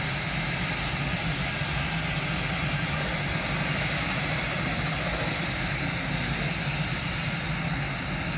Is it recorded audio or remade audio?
recorded